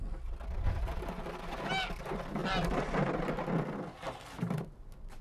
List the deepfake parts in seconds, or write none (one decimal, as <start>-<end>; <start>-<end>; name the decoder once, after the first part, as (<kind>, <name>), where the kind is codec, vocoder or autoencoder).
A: none